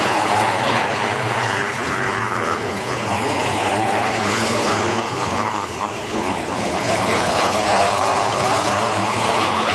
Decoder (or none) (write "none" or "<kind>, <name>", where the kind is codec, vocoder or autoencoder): codec, HILCodec